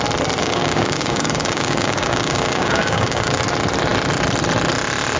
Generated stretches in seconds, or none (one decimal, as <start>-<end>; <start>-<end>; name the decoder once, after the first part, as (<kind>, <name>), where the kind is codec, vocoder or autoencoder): 0.4-3.4 (codec, DAC)